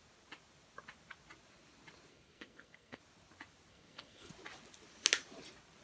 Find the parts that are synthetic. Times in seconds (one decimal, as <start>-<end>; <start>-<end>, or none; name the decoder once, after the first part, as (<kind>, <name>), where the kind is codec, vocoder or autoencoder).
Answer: 2.1-3.0 (codec, SNAC); 3.7-4.3